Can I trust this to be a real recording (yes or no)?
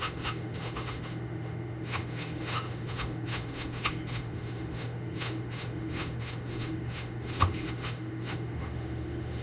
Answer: no